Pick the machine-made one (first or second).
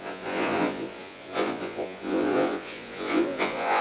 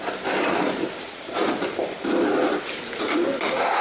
first